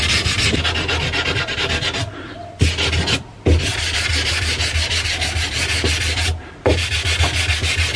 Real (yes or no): yes